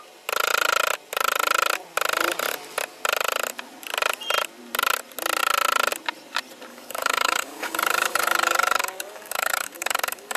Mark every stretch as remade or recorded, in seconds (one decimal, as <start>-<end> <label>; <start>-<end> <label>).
0.0-6.7 recorded; 6.7-10.4 remade